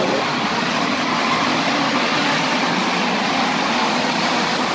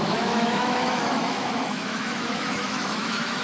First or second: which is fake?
second